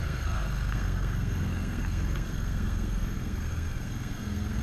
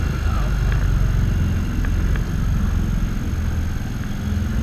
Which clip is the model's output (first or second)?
first